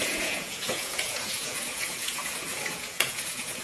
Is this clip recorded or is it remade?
remade